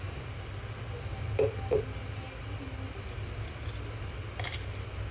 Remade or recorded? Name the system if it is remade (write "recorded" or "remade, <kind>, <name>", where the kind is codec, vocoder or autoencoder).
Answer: recorded